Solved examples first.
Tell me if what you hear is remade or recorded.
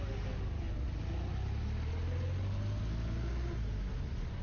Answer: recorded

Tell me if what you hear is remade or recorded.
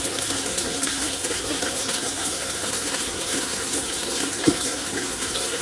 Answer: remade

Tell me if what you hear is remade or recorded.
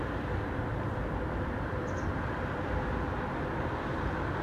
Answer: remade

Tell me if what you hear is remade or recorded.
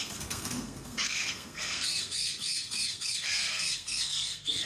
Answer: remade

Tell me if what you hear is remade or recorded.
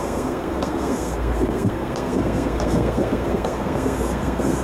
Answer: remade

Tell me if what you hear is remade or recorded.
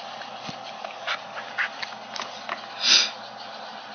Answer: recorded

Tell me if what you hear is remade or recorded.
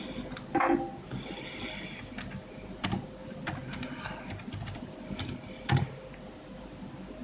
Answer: recorded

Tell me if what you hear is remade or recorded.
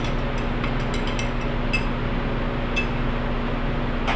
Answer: recorded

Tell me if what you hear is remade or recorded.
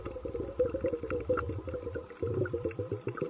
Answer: recorded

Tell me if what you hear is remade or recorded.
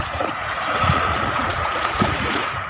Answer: remade